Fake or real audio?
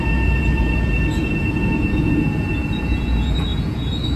fake